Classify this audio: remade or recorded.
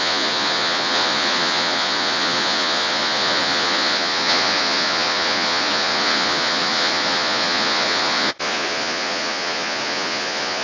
remade